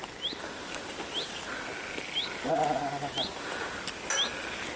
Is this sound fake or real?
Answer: real